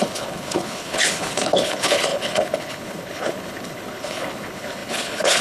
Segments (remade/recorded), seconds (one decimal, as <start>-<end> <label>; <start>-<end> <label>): 0.0-5.4 remade